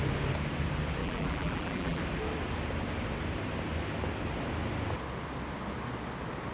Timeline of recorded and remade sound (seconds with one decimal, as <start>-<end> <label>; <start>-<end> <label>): 0.0-1.0 recorded; 1.0-2.0 remade; 2.0-6.5 recorded